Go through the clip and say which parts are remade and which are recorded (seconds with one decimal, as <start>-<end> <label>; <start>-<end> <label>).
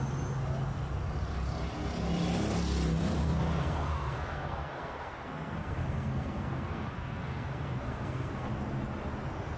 0.0-3.2 recorded; 3.2-8.5 remade; 8.5-9.6 recorded